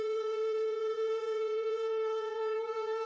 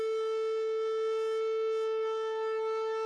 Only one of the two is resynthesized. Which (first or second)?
first